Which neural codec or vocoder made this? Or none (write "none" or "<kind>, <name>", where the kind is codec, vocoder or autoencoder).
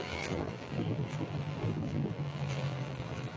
vocoder, BigVGAN v2